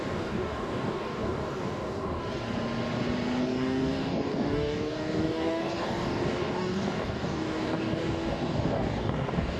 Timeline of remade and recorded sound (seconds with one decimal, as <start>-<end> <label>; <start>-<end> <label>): 0.0-2.2 remade; 2.2-3.4 recorded; 3.4-9.6 remade